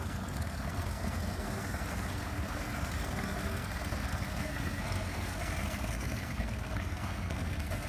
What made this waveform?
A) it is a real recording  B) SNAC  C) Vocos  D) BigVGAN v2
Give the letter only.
B